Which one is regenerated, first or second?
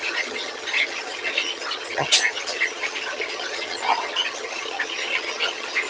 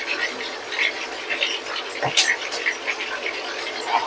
first